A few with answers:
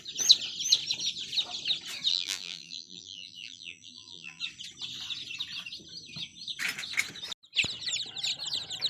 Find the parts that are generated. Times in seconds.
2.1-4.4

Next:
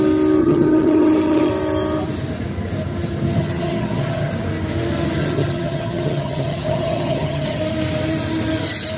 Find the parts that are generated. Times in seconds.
0.4-1.5; 3.4-4.3; 5.2-7.6

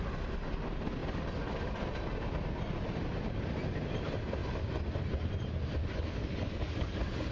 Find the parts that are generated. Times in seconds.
5.8-7.3

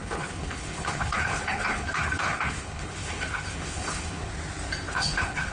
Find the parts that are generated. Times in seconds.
0.0-4.3; 4.9-5.5